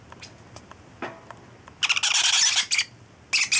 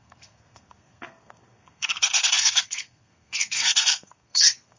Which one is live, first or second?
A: first